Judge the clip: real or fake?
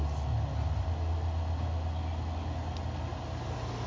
real